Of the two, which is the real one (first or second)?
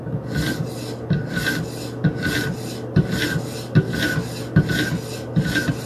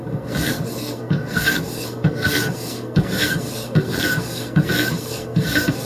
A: first